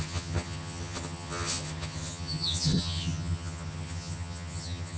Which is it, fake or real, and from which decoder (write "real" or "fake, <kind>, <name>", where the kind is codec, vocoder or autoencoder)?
fake, vocoder, HiFi-GAN